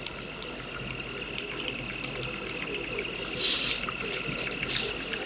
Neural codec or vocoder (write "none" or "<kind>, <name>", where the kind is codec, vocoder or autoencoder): none